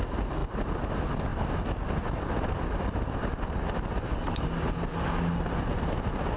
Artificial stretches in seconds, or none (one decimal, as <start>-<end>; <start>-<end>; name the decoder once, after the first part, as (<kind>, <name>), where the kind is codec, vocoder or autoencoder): none